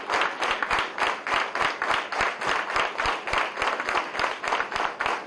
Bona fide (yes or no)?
yes